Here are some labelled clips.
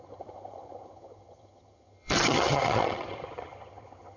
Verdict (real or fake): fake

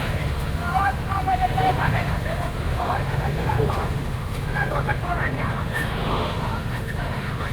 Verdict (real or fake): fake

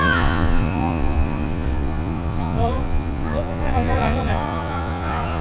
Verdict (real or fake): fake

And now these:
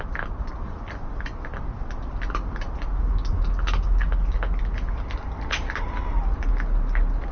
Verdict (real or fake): real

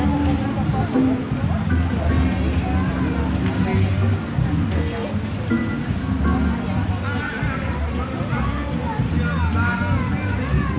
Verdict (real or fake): real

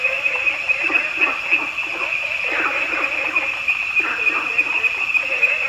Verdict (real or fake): real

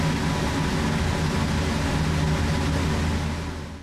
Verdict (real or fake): real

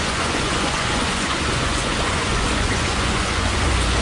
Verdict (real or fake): fake